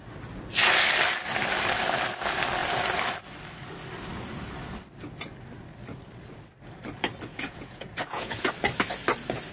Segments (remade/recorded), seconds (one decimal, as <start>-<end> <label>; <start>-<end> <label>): 0.0-7.3 recorded; 7.3-8.5 remade; 8.5-9.5 recorded